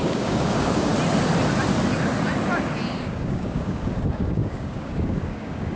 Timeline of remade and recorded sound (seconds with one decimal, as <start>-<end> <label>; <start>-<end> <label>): 0.0-0.9 remade; 0.9-3.0 recorded; 3.0-5.8 remade